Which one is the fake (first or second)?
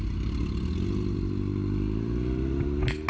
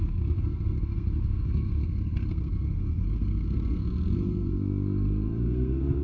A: second